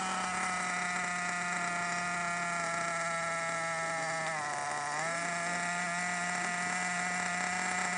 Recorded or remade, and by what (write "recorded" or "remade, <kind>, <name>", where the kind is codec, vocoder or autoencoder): recorded